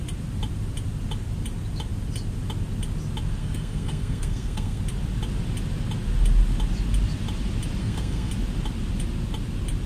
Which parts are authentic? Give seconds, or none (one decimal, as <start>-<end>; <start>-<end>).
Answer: 0.0-3.4; 4.8-7.8; 8.3-9.9

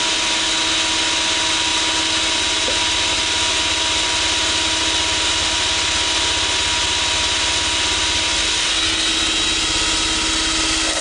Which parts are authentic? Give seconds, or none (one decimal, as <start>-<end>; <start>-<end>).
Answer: 0.0-11.0